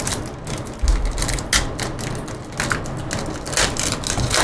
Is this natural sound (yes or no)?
yes